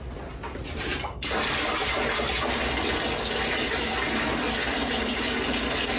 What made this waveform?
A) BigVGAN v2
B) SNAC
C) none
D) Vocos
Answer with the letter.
C